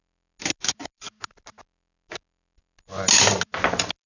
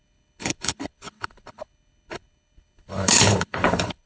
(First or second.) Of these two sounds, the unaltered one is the first